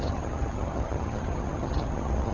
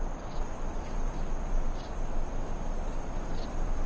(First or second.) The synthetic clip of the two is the first